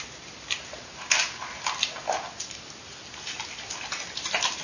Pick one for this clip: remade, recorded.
recorded